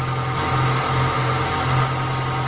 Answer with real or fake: real